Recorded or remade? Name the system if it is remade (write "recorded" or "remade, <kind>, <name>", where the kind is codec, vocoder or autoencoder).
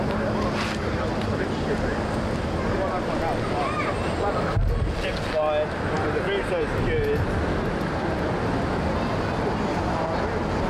recorded